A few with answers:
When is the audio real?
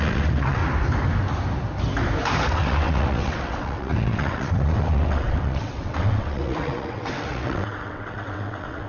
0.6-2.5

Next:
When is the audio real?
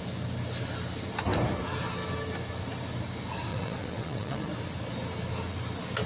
0.0-3.5; 4.5-6.1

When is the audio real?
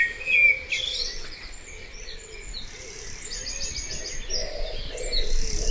0.0-0.9; 2.5-5.7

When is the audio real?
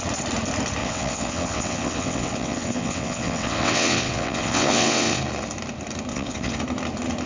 0.0-0.8; 5.2-6.1; 6.6-7.3